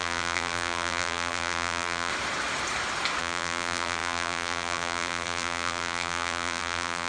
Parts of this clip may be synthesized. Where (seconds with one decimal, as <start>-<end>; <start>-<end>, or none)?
0.0-2.1; 3.2-7.1